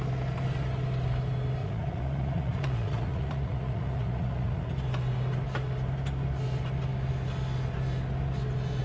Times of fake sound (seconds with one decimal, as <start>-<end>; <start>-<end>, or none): 1.6-4.7